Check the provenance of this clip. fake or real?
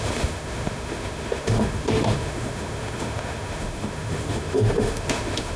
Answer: fake